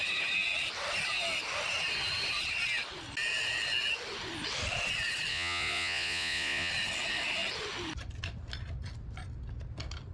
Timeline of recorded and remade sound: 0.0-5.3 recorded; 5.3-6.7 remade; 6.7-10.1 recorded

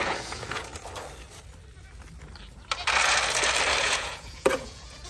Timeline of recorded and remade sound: 0.0-0.7 remade; 0.7-3.8 recorded; 3.8-5.1 remade

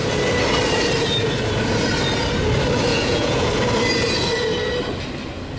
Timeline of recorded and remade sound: 0.0-2.9 recorded; 2.9-3.5 remade; 3.5-5.6 recorded

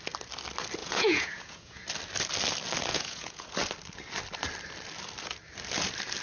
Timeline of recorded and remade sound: 0.0-0.8 recorded; 0.8-1.8 remade; 1.8-2.9 recorded; 2.9-3.5 remade; 3.5-6.2 recorded

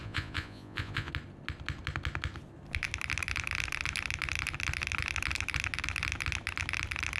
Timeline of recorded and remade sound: 0.0-1.1 remade; 1.1-7.2 recorded